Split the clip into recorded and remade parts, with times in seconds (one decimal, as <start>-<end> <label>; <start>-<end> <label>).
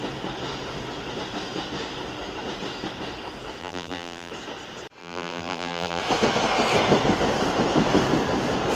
0.0-3.6 recorded; 3.6-4.3 remade; 4.3-5.0 recorded; 5.0-6.0 remade; 6.0-8.8 recorded